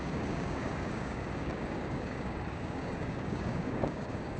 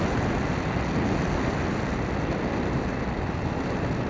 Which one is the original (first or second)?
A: second